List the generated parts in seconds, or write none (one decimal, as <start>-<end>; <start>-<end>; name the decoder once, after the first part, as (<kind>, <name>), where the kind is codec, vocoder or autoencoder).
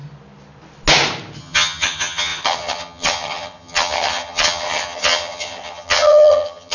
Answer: 1.4-6.7 (vocoder, HiFi-GAN)